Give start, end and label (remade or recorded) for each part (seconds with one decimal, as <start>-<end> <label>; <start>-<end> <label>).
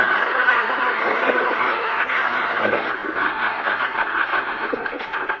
0.0-5.4 remade